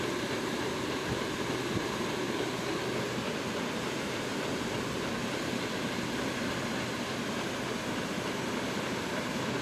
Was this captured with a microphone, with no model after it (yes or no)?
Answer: yes